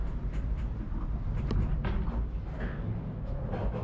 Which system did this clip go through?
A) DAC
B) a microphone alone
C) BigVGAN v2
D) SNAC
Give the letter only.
B